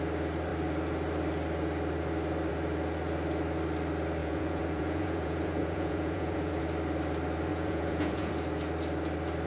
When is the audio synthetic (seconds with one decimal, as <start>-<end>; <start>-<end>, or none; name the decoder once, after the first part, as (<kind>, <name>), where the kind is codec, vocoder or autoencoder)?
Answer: 4.2-6.6 (vocoder, Vocos); 7.5-8.3